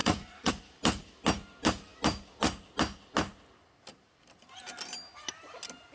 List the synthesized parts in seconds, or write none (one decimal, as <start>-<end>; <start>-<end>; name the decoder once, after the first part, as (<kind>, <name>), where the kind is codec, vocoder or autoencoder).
0.0-0.5 (vocoder, Vocos)